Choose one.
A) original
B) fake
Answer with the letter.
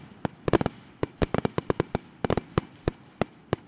A